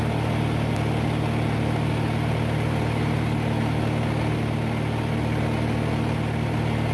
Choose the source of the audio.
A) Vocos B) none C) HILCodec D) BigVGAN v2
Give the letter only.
B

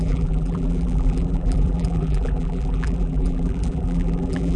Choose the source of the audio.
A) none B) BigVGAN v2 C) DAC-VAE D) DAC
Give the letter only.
B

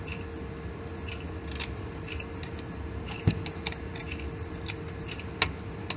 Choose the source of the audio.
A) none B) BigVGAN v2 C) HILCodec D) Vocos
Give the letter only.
A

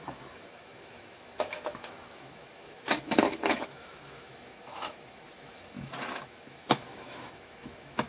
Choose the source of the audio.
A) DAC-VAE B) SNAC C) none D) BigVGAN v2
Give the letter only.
A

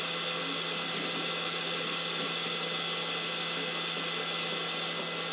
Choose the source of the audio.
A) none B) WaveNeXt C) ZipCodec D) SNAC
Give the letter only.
A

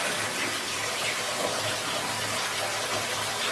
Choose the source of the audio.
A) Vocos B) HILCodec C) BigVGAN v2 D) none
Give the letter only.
C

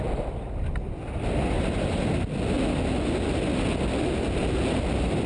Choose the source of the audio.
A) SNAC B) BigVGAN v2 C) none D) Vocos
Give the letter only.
C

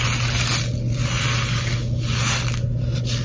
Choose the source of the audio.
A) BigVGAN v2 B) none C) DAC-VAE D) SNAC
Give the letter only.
B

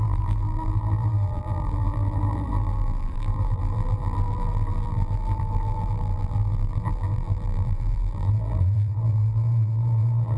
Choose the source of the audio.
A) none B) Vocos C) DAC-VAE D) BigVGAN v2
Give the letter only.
D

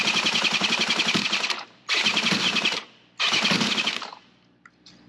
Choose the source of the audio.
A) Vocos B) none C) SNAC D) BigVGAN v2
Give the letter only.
D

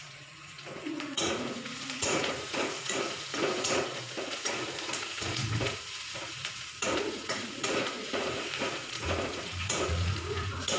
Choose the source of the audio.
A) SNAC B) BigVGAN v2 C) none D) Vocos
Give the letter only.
D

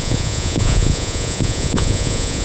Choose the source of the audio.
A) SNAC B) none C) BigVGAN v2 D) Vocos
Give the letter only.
D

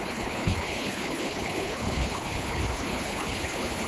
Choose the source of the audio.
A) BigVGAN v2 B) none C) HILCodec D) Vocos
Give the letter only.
C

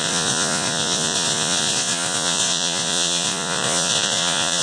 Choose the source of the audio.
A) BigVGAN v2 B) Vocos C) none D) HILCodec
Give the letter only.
B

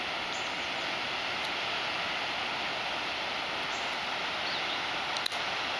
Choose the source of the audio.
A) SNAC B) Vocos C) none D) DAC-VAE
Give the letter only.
C